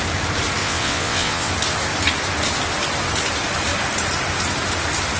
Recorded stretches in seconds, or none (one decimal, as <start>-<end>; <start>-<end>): 0.0-0.6; 1.5-5.2